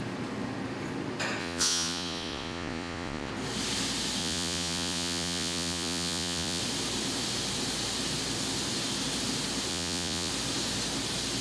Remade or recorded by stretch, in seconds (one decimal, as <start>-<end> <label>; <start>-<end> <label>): 0.0-1.4 recorded; 1.4-3.3 remade; 3.3-4.2 recorded; 4.2-6.6 remade; 6.6-9.7 recorded; 9.7-10.3 remade; 10.3-11.4 recorded